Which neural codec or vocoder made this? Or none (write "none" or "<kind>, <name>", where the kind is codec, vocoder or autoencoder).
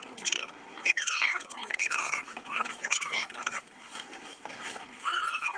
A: codec, SNAC